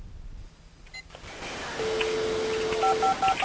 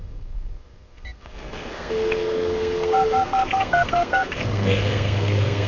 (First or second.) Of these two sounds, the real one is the first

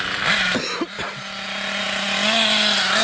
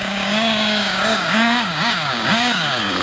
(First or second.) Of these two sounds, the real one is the first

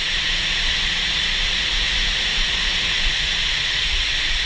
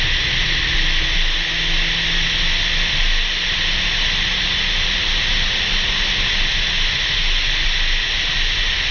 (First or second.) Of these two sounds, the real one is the second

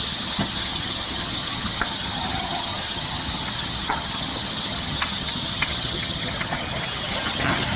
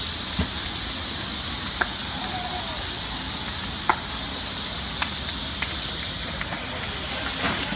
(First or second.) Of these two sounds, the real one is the second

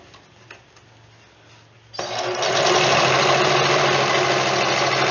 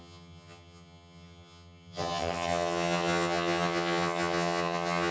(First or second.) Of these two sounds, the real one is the first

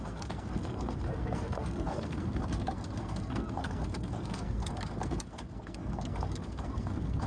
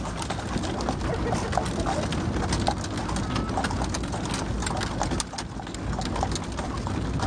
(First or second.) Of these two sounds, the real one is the second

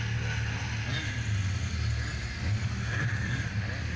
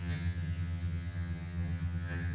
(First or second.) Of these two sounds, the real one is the first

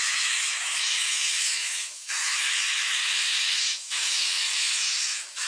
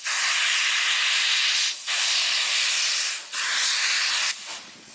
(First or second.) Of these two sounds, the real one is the second